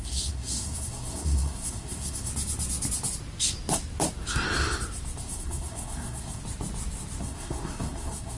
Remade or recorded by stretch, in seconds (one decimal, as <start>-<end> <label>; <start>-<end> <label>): 0.0-2.3 remade; 2.3-5.2 recorded; 5.2-6.4 remade; 6.4-7.2 recorded; 7.2-8.4 remade